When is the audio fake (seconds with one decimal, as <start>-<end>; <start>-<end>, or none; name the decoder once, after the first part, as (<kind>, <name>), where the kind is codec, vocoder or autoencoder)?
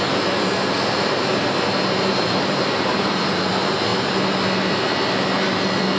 2.1-3.5 (vocoder, BigVGAN v2)